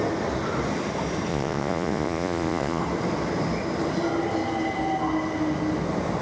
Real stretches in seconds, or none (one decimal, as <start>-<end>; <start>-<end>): 0.0-1.3; 2.8-6.2